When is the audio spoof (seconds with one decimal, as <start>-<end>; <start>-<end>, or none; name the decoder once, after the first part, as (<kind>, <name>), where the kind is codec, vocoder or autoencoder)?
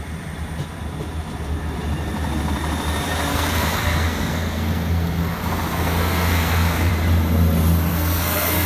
3.3-6.9 (codec, SNAC); 7.9-8.7